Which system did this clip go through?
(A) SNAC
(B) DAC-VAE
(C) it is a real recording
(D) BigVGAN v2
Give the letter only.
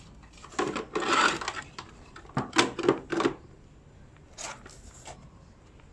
C